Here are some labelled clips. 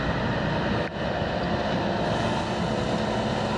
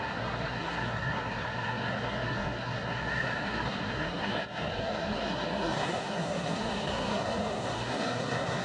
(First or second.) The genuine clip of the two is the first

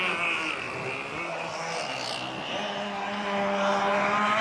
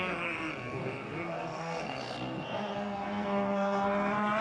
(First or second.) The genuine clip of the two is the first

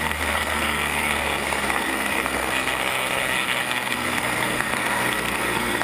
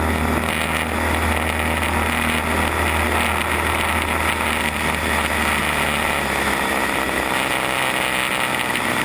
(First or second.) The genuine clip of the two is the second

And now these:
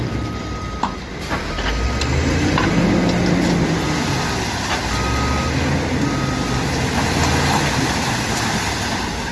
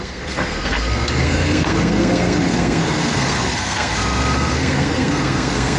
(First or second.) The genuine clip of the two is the first